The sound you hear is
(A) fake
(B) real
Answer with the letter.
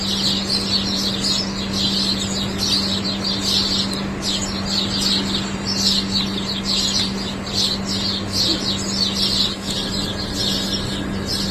B